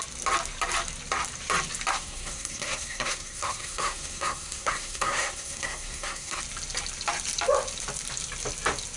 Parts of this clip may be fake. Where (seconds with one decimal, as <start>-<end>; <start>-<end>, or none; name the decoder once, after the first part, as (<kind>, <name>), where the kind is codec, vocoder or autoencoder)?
1.9-6.4 (codec, SNAC)